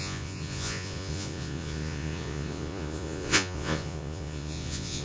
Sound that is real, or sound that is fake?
fake